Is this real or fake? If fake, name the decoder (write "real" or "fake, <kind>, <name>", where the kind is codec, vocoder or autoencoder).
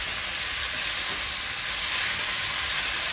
real